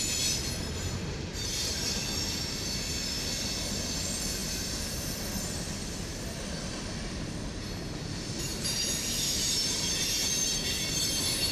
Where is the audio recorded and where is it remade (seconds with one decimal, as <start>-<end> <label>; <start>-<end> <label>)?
0.0-1.1 recorded; 1.1-1.7 remade; 1.7-4.4 recorded; 4.4-5.2 remade; 5.2-8.5 recorded; 8.5-10.9 remade; 10.9-11.5 recorded